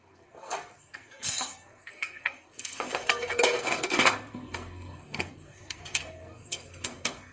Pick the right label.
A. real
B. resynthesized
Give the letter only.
B